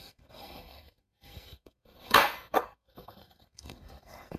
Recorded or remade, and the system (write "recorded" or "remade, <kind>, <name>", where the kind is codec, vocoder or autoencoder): remade, codec, SNAC